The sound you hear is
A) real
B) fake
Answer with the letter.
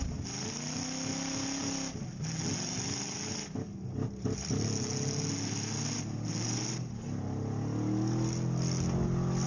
A